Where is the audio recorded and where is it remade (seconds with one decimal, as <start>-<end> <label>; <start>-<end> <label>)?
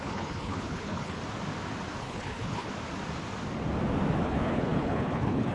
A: 0.0-1.2 remade; 1.2-2.0 recorded; 2.0-2.7 remade; 2.7-4.2 recorded; 4.2-5.5 remade